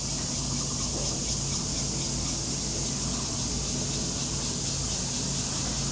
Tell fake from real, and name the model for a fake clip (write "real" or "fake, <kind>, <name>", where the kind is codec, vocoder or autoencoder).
real